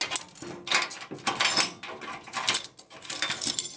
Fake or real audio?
real